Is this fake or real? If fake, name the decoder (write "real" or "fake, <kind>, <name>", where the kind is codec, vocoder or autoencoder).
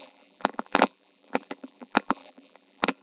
fake, vocoder, BigVGAN v2